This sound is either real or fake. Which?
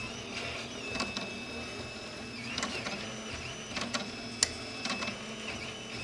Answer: real